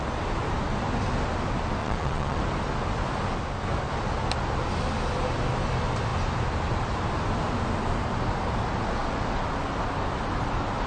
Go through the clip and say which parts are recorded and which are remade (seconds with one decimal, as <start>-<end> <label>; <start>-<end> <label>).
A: 0.0-1.8 recorded; 1.8-2.4 remade; 2.4-10.9 recorded